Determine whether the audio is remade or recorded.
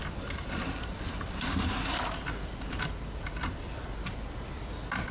remade